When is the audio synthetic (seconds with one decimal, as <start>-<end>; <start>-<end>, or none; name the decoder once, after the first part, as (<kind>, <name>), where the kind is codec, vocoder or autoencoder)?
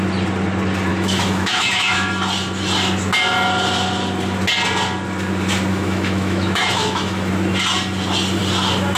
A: 0.9-2.1 (autoencoder, DAC-VAE); 5.7-7.3